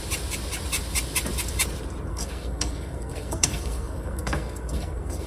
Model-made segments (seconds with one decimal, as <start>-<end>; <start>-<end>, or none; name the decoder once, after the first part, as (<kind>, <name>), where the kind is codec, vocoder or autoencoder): 2.1-5.3 (codec, SNAC)